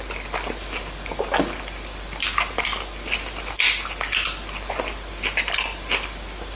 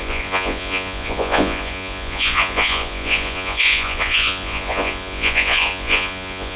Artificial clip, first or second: second